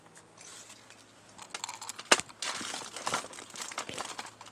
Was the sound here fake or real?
real